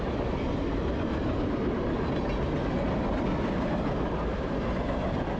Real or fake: real